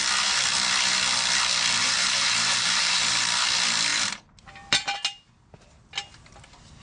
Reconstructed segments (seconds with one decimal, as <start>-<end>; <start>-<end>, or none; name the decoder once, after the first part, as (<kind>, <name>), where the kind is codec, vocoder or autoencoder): 1.8-3.4 (vocoder, BigVGAN v2); 3.9-4.7